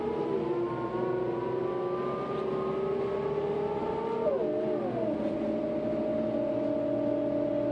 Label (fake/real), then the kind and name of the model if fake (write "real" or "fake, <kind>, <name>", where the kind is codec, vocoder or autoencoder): real